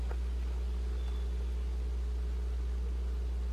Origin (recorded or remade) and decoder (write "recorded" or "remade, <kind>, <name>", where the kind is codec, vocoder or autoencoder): recorded